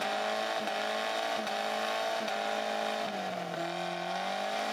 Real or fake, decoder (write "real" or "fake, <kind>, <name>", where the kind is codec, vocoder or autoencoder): real